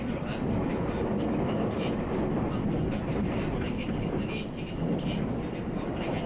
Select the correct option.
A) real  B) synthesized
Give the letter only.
B